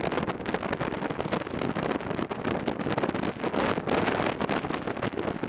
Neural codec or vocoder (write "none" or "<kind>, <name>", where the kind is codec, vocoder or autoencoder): none